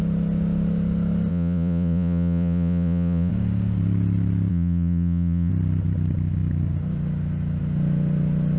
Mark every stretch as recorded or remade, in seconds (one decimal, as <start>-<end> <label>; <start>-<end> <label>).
0.0-1.3 recorded; 1.3-3.3 remade; 3.3-4.5 recorded; 4.5-5.5 remade; 5.5-8.6 recorded